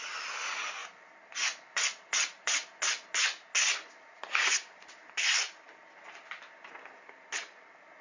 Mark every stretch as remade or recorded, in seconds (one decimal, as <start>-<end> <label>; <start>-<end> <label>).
0.0-8.0 recorded